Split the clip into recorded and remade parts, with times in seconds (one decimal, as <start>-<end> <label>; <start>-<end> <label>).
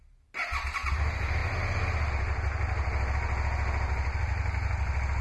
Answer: 0.0-5.2 recorded